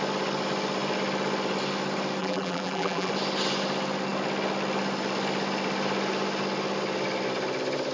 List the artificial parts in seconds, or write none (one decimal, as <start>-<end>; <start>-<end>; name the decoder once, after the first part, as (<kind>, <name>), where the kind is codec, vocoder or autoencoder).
2.2-3.1 (vocoder, BigVGAN v2)